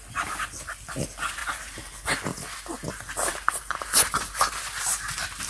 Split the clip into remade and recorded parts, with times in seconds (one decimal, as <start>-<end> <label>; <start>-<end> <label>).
0.0-5.5 recorded